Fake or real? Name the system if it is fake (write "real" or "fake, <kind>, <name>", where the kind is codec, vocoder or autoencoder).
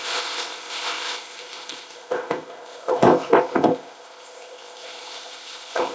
fake, codec, ZipCodec